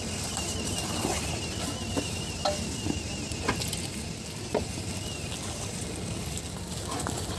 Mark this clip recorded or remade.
recorded